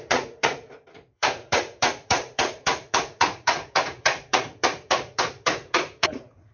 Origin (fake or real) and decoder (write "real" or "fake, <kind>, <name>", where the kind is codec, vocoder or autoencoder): fake, vocoder, Vocos